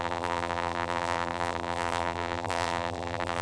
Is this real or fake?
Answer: fake